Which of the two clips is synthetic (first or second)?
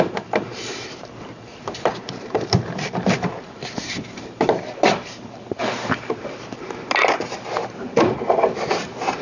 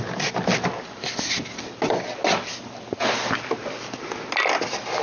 first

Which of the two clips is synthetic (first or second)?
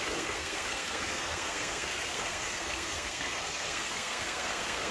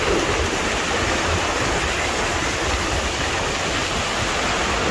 first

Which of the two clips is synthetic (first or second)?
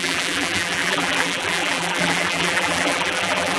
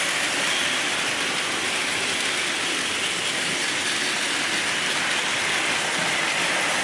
first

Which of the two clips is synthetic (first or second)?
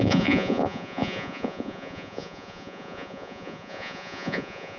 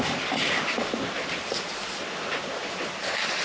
first